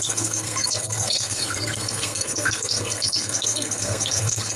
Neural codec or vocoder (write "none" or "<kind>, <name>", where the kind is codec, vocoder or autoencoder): codec, SNAC